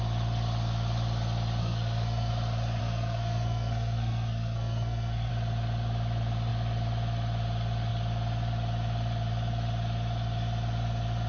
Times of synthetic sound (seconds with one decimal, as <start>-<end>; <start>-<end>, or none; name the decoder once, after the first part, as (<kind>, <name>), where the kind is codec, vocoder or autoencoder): 1.6-2.3 (codec, SNAC); 2.8-5.3